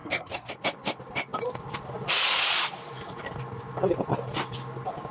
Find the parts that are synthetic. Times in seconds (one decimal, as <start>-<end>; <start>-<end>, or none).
0.0-0.5

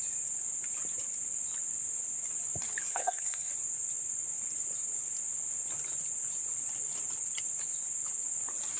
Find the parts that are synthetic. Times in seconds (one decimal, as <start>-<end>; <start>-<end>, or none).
2.9-3.5

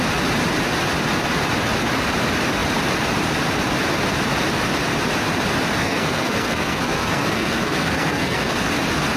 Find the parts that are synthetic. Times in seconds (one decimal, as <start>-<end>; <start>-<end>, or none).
5.8-8.7